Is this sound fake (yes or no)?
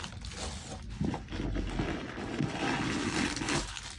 no